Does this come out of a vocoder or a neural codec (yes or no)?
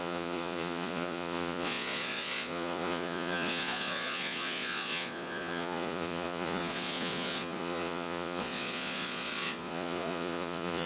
yes